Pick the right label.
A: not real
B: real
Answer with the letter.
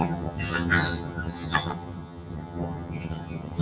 A